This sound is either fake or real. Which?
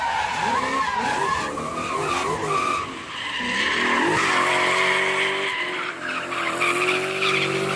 real